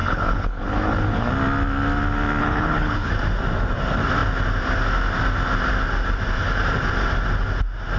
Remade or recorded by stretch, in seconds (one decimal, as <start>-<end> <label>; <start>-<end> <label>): 0.0-1.3 remade; 1.3-2.4 recorded; 2.4-3.1 remade; 3.1-8.0 recorded